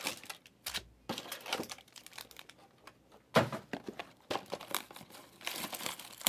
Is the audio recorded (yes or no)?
yes